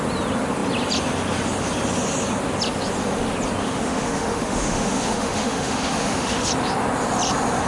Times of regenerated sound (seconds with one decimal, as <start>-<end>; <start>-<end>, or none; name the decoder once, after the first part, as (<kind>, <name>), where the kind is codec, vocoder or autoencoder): 3.6-6.5 (autoencoder, DAC-VAE)